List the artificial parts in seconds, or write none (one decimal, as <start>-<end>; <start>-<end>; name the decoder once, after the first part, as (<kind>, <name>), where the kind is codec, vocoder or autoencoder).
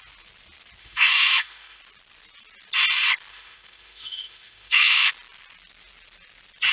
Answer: 0.8-1.8 (autoencoder, DAC-VAE); 3.3-5.1